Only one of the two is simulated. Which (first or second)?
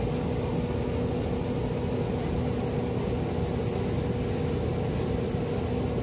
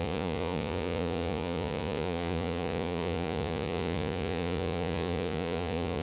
second